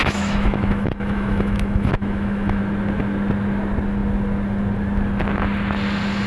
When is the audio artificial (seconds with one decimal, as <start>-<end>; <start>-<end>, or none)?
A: 0.0-2.6